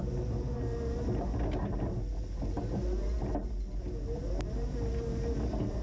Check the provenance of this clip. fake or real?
real